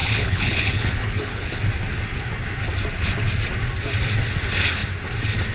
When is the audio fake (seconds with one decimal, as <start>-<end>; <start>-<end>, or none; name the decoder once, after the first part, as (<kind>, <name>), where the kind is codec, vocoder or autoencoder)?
0.0-1.6 (codec, HILCodec)